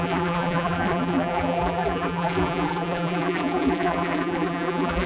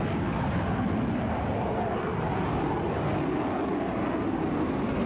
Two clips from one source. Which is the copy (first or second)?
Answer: first